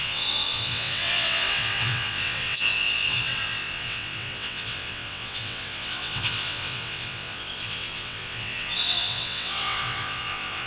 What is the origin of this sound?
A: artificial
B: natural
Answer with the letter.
A